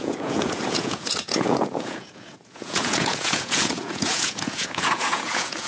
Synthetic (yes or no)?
yes